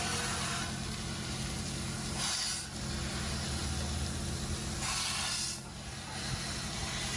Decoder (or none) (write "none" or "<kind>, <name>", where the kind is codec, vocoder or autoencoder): none